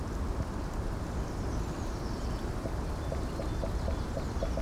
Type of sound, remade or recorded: recorded